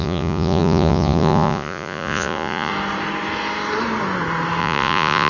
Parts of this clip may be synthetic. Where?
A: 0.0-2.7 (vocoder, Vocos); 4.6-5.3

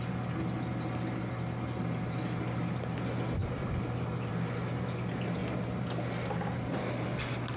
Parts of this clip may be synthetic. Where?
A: 3.4-4.3 (vocoder, BigVGAN v2); 5.4-6.8